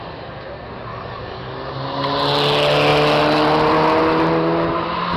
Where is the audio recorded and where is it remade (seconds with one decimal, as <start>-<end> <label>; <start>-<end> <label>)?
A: 0.0-0.9 recorded; 0.9-1.7 remade; 1.7-5.2 recorded